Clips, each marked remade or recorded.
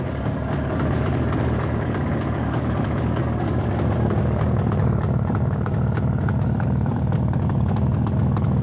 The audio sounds remade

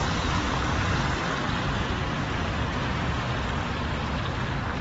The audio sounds recorded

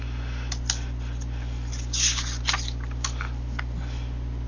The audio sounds recorded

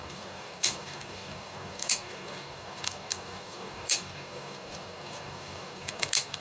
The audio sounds remade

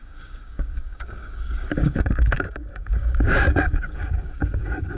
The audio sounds remade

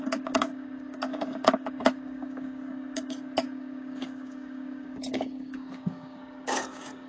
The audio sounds remade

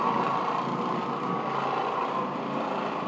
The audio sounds recorded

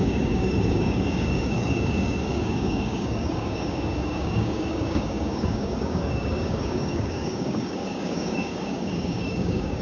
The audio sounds remade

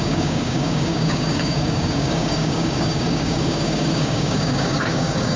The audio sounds remade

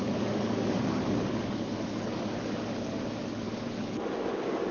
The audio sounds remade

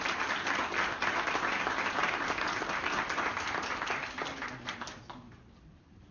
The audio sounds recorded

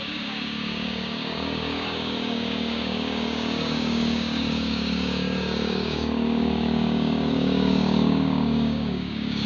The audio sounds remade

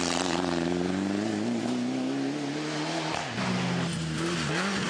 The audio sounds recorded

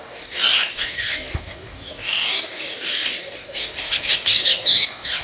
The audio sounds remade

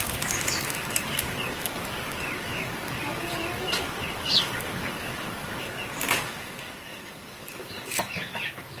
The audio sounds remade